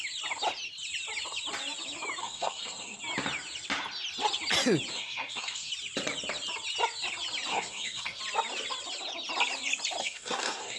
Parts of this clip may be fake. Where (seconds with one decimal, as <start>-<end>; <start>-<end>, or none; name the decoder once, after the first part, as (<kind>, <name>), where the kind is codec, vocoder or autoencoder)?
2.2-3.0 (codec, SNAC); 4.9-5.7; 7.5-8.2; 10.0-10.8